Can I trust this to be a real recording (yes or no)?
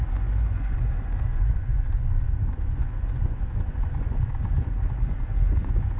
no